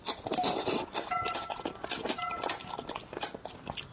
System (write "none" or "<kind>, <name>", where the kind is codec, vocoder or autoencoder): none